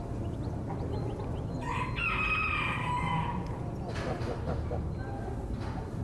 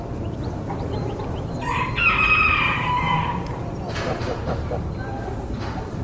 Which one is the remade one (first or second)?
second